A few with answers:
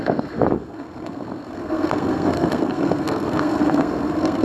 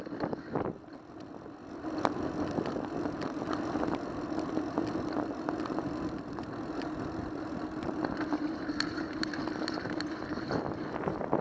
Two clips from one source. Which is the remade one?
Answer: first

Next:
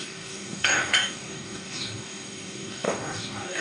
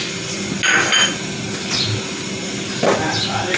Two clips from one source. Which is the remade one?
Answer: first